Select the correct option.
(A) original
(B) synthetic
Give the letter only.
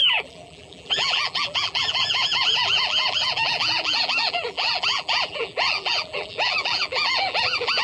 B